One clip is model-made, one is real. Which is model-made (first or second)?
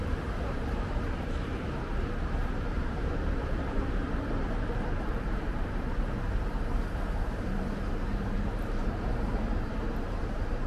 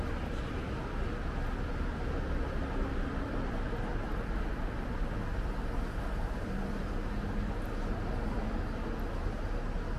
first